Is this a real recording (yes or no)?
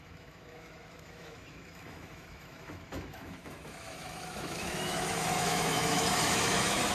no